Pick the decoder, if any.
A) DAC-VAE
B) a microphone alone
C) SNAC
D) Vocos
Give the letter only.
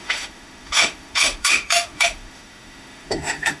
A